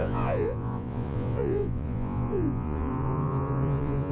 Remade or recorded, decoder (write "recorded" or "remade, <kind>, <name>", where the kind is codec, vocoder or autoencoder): remade, vocoder, Vocos